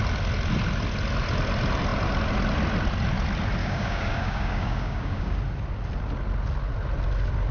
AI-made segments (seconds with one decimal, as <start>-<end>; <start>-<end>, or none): 3.6-5.4